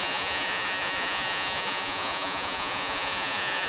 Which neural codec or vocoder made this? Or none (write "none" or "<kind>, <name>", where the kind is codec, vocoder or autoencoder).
vocoder, Vocos